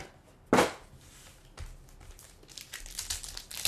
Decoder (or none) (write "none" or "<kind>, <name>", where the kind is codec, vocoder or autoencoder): none